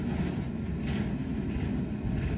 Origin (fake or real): real